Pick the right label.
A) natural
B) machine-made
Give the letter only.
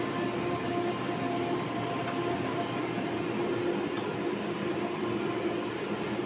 A